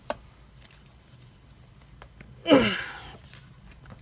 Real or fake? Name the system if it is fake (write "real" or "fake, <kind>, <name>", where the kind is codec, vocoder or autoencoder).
real